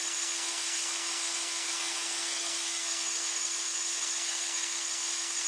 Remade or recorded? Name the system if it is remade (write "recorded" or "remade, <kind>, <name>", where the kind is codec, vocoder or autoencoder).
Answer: remade, codec, SNAC